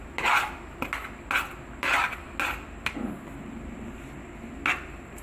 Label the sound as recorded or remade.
recorded